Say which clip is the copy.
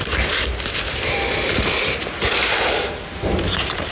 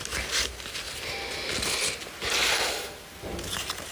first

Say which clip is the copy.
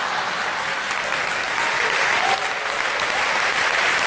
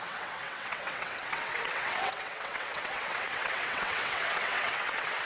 second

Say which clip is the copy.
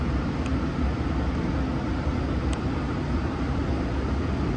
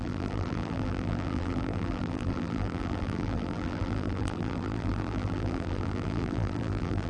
second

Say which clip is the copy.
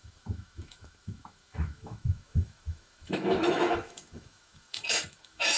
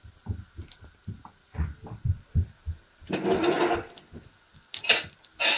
first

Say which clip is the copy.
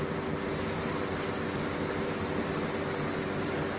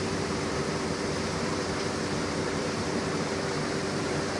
second